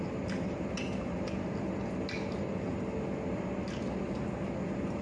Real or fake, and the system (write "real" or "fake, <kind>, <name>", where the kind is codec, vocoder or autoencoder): real